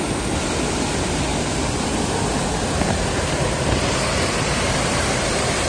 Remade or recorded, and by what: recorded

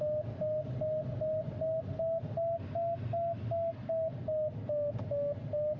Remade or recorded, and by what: recorded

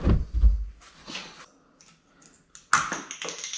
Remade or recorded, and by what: recorded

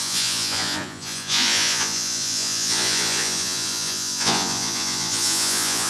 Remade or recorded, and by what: remade, vocoder, Vocos